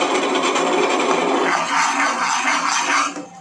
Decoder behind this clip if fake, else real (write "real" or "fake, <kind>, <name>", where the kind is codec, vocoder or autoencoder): real